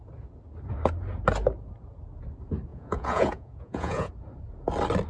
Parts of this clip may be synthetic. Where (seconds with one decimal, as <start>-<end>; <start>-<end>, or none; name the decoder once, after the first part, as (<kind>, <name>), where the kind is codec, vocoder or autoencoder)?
2.7-4.1 (vocoder, Vocos)